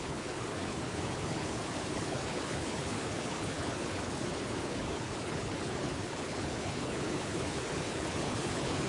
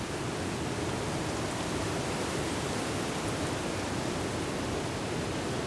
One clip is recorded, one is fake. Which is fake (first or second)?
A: first